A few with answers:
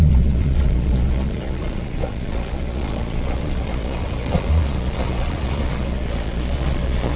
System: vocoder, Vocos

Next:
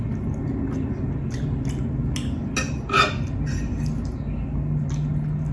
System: none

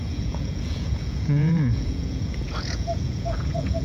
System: vocoder, Vocos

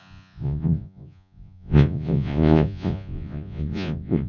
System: vocoder, Vocos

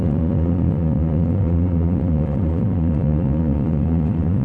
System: vocoder, Vocos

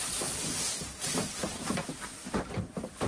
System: none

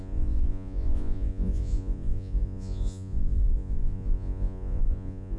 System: vocoder, Vocos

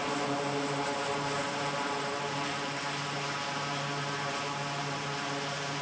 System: none